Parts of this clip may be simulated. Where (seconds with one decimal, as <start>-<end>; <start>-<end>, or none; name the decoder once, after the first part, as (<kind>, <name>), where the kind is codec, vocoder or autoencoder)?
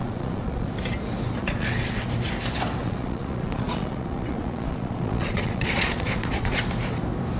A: 0.0-0.7 (vocoder, Vocos); 1.4-2.1; 2.8-6.6